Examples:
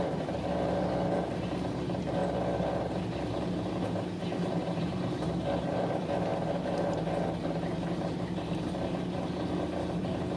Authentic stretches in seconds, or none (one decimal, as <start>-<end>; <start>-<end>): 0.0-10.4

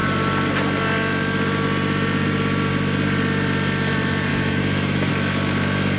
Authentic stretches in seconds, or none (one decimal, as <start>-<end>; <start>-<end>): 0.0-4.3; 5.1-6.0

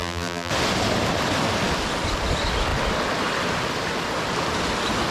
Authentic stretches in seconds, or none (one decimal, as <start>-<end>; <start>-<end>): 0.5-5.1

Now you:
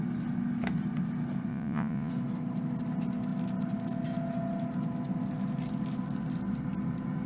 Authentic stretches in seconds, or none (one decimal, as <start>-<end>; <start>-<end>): 0.0-1.5; 2.1-7.3

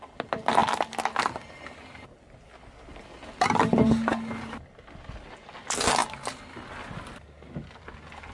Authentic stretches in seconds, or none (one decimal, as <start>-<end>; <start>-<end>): 0.0-8.3